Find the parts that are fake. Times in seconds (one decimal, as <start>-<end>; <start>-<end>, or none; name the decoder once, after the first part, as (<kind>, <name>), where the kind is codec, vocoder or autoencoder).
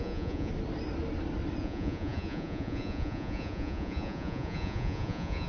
0.0-0.5 (vocoder, Vocos); 1.6-5.5